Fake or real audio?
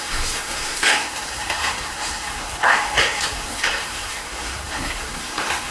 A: fake